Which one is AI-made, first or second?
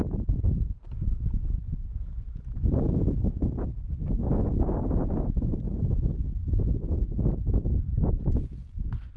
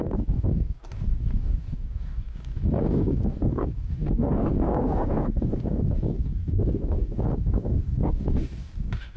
second